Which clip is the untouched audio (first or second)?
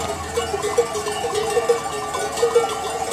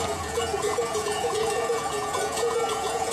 first